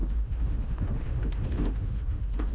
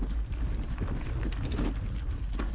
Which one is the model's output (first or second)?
first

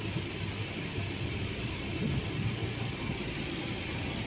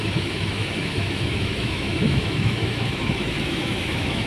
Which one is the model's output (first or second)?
second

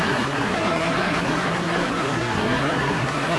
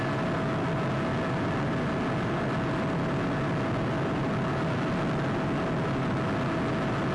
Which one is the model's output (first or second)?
first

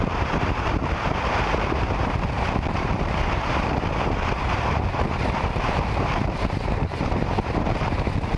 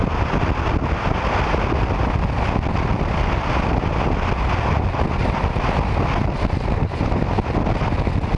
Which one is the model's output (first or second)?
first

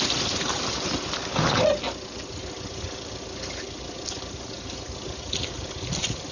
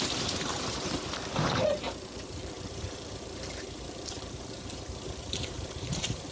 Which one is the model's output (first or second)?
second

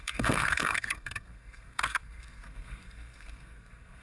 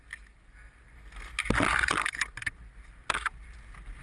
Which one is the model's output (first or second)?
first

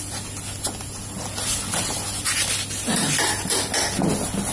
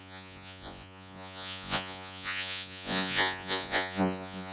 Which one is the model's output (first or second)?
second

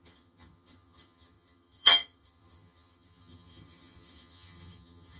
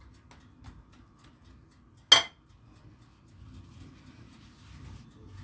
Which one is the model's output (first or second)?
first